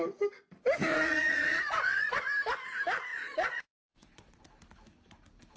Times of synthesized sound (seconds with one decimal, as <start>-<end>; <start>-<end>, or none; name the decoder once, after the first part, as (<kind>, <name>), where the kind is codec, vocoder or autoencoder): 0.9-2.3 (vocoder, Vocos); 3.1-4.4